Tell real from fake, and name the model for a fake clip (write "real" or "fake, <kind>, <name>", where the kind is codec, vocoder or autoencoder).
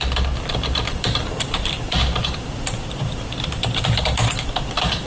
fake, vocoder, BigVGAN v2